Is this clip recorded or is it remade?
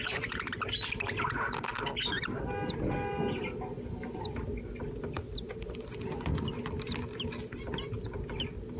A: recorded